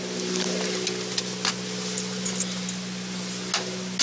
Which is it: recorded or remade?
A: recorded